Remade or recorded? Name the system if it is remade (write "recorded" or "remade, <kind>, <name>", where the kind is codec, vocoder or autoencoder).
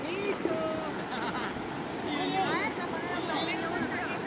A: recorded